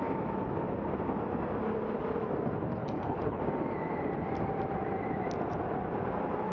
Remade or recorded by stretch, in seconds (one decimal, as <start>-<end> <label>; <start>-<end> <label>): 0.0-2.8 recorded; 2.8-3.4 remade; 3.4-6.5 recorded